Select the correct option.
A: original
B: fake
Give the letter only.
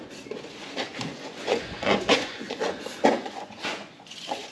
B